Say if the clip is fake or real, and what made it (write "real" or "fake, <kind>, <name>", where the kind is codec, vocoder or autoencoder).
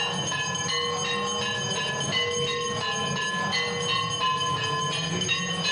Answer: real